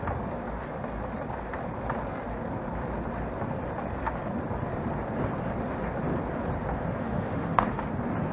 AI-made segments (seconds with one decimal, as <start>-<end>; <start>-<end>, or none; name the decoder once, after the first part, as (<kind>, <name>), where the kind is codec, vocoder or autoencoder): 7.0-7.8 (autoencoder, DAC-VAE)